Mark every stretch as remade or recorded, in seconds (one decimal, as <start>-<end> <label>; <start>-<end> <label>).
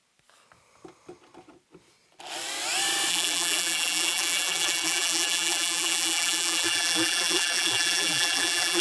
0.0-3.1 recorded; 3.1-8.8 remade